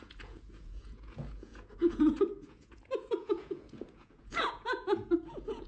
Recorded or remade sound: remade